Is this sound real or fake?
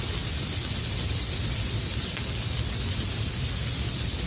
real